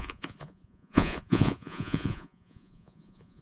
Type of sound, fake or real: fake